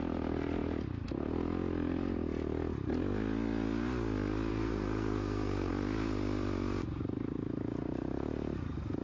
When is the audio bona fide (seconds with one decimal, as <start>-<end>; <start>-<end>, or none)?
0.0-4.5; 5.7-9.0